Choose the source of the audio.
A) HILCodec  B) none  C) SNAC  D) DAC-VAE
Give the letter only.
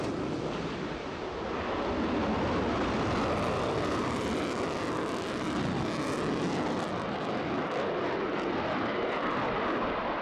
B